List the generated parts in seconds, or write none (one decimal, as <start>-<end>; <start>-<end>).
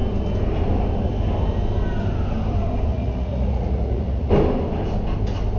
2.9-4.3